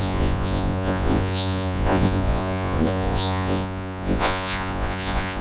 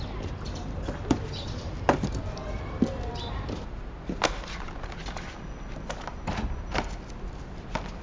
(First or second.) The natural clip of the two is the second